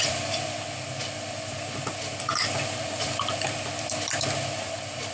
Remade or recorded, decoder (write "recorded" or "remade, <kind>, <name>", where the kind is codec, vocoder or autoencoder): remade, vocoder, BigVGAN v2